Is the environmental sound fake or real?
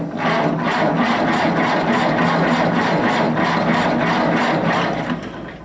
real